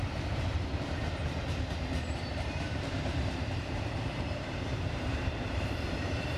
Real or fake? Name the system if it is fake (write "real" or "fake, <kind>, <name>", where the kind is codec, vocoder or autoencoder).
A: fake, vocoder, BigVGAN v2